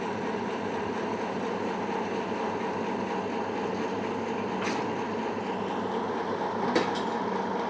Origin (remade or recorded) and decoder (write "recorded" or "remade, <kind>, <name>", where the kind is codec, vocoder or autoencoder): recorded